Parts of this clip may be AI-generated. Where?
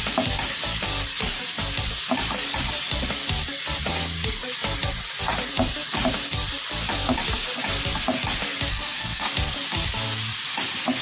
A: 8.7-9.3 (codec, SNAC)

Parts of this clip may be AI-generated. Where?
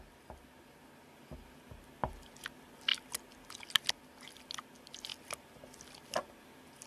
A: none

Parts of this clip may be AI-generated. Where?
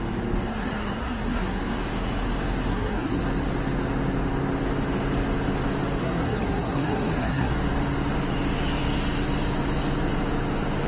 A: 0.5-1.6 (codec, SNAC); 2.7-3.2; 6.0-7.5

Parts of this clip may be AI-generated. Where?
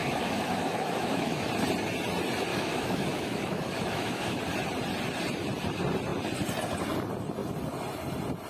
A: 0.0-1.5 (autoencoder, DAC-VAE); 2.5-4.4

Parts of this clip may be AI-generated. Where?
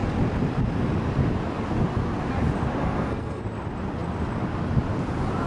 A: 2.8-3.4 (codec, SNAC)